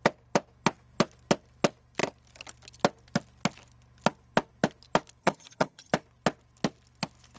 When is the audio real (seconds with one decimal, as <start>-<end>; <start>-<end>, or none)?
0.0-5.2; 5.9-7.4